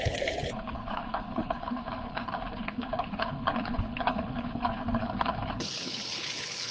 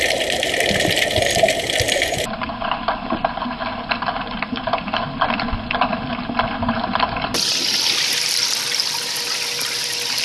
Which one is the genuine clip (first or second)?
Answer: second